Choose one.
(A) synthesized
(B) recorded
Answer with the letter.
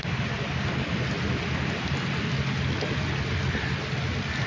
B